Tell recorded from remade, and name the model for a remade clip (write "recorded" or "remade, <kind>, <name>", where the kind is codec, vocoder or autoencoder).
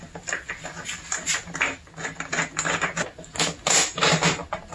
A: recorded